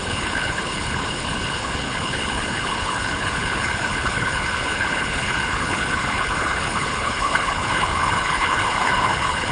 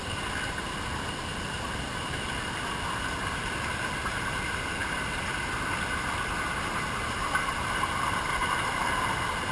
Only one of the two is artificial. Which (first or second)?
first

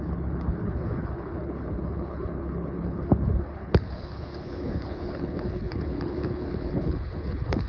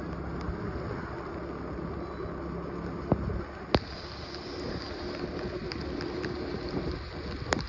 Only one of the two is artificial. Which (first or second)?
first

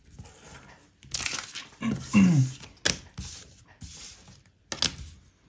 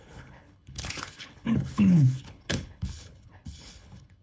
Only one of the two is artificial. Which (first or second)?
second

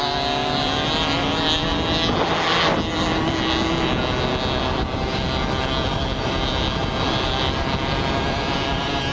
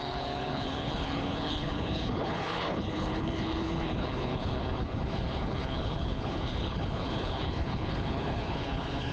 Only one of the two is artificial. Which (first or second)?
second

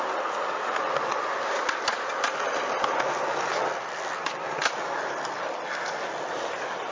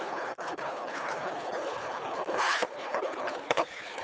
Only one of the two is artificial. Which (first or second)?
second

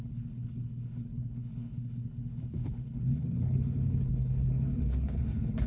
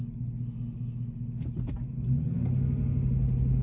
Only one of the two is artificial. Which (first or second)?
first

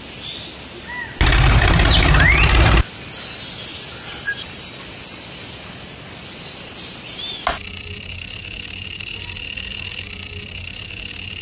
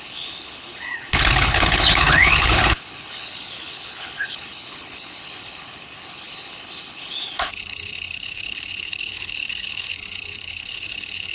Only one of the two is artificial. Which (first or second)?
second